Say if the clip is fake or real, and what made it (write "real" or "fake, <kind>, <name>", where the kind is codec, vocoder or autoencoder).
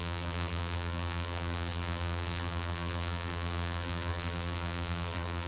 fake, vocoder, BigVGAN v2